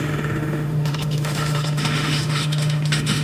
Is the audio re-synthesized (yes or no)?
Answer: yes